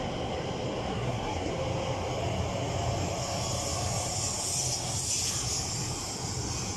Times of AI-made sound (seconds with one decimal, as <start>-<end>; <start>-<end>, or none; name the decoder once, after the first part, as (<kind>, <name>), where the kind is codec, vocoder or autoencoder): 0.9-1.5 (codec, SNAC)